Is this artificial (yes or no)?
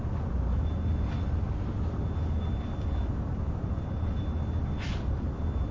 no